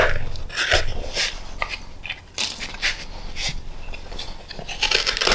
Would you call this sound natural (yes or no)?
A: yes